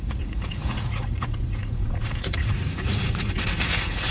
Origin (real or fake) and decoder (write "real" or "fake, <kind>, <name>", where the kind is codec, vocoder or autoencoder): fake, vocoder, Vocos